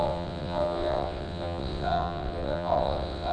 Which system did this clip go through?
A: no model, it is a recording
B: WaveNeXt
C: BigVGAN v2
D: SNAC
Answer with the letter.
B